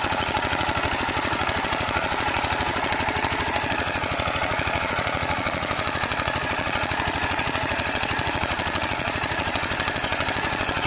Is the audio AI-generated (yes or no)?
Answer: yes